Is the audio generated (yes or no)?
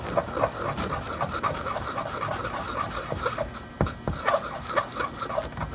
no